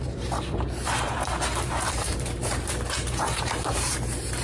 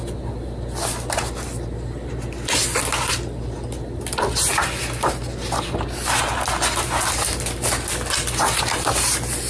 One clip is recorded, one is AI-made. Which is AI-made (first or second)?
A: first